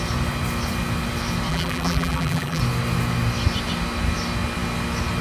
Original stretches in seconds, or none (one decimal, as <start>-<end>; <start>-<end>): 0.0-1.5; 2.6-5.2